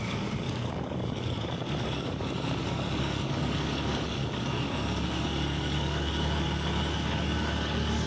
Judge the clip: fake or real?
fake